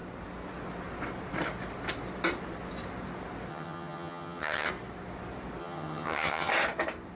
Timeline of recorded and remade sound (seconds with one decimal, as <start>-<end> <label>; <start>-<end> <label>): 0.0-3.5 recorded; 3.5-4.7 remade; 4.7-5.6 recorded; 5.6-6.5 remade; 6.5-7.2 recorded